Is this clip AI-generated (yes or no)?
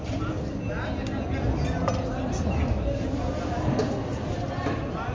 no